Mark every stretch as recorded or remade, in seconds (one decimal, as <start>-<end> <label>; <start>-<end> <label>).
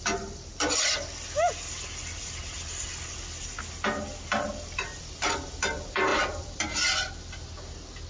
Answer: 0.0-6.1 recorded; 6.1-7.1 remade; 7.1-8.1 recorded